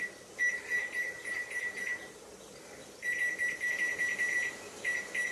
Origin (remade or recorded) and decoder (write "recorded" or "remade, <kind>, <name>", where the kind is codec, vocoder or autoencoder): recorded